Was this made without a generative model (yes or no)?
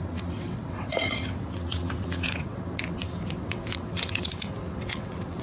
no